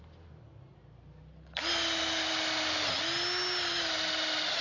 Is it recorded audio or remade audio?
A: recorded